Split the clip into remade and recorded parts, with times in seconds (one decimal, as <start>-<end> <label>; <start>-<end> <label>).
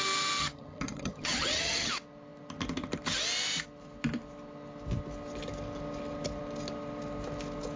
0.0-0.4 recorded; 0.4-1.9 remade; 1.9-7.8 recorded